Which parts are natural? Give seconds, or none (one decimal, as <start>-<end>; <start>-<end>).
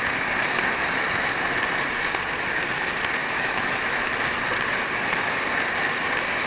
0.0-3.2; 4.1-6.5